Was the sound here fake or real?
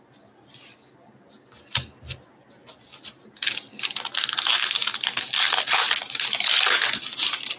real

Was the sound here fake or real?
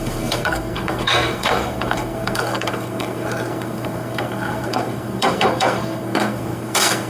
fake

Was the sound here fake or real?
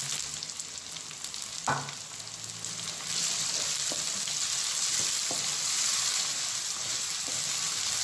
real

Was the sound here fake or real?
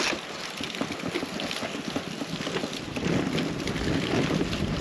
real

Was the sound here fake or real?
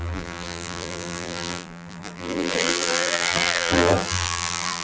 fake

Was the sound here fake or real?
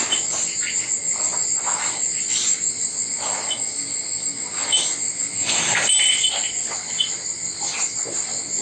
real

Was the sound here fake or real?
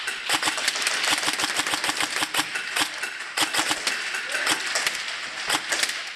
real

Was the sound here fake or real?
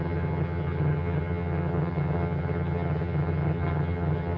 fake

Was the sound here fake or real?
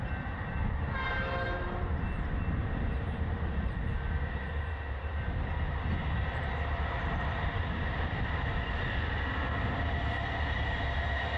fake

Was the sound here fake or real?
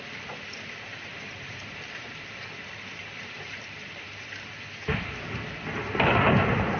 fake